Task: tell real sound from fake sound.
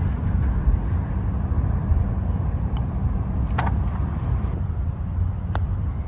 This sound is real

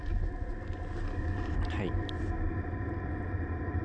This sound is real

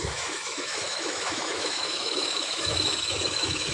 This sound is fake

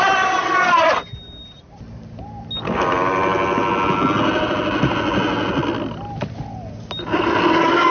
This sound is real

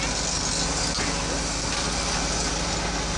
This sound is real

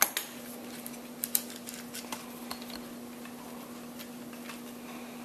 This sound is real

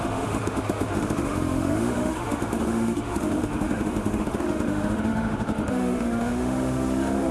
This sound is fake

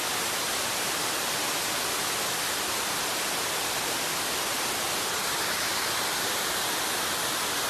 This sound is real